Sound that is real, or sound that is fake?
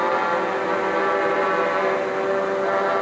real